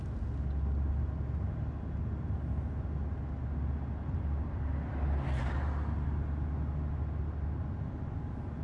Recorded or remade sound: recorded